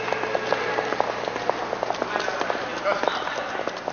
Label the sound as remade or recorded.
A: recorded